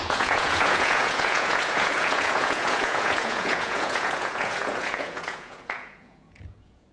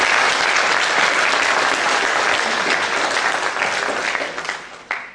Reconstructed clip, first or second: first